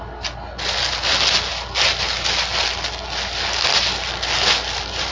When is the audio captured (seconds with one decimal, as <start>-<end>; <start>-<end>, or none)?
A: 0.0-5.1